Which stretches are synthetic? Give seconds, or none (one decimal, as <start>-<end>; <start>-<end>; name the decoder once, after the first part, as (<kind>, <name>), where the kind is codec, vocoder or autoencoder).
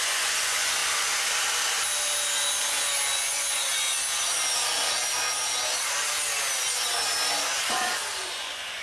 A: 0.0-0.8 (vocoder, Vocos); 3.1-3.6; 7.7-8.8